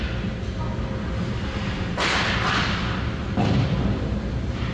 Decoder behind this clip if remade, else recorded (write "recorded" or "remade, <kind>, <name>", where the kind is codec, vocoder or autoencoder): recorded